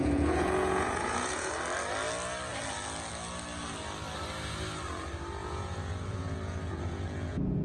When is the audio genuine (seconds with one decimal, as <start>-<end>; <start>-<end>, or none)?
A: 1.5-5.4

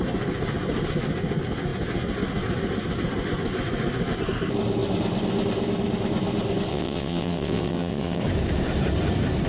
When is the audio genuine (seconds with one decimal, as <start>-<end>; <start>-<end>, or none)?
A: 0.0-6.7; 8.2-9.5